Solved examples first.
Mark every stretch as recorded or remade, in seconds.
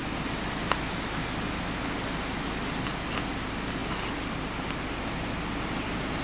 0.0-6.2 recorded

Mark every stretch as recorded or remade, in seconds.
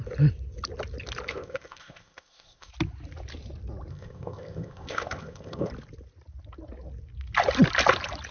0.0-1.3 recorded; 1.3-2.7 remade; 2.7-3.9 recorded; 3.9-5.7 remade; 5.7-8.3 recorded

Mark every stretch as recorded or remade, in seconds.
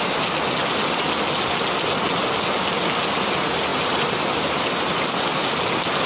0.0-6.1 recorded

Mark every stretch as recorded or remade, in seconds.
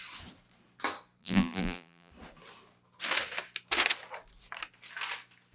0.0-1.2 recorded; 1.2-2.1 remade; 2.1-5.5 recorded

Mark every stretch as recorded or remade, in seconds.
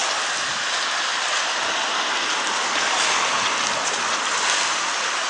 0.0-5.3 recorded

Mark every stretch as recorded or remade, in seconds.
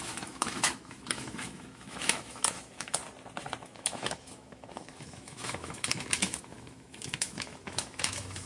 0.0-3.0 remade; 3.0-3.6 recorded; 3.6-8.5 remade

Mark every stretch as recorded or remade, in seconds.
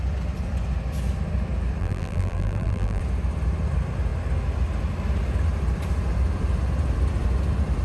0.0-1.8 recorded; 1.8-3.0 remade; 3.0-7.8 recorded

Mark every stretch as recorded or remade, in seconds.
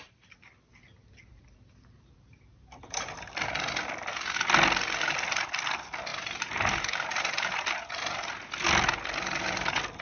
0.0-6.1 recorded; 6.1-7.6 remade; 7.6-10.0 recorded